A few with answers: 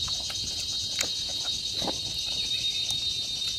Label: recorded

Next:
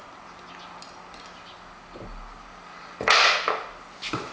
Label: recorded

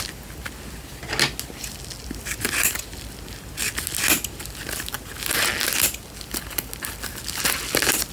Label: recorded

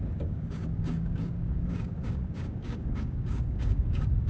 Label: remade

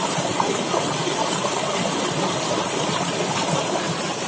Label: recorded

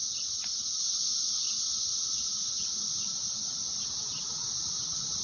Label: recorded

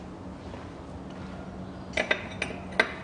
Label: recorded